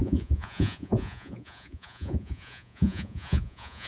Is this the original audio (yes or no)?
no